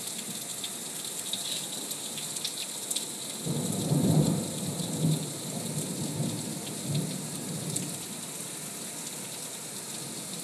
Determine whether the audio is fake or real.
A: real